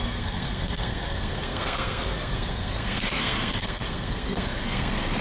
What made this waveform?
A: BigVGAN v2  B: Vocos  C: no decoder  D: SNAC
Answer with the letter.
D